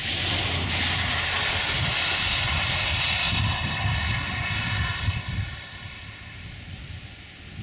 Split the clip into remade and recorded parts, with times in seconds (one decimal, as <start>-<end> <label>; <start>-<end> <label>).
0.0-7.6 recorded